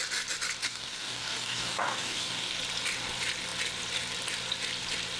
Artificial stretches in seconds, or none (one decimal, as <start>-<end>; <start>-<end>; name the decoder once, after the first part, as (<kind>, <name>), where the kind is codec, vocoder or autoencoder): 0.6-2.6 (codec, DAC)